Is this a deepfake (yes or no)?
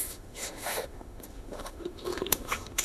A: yes